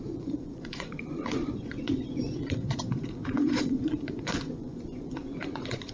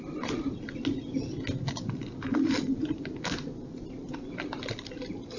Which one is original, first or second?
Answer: second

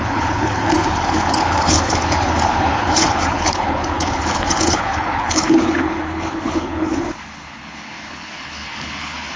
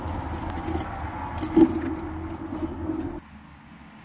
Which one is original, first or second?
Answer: second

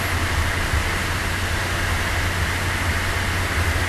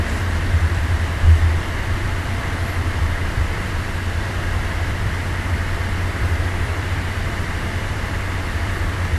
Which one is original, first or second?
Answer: first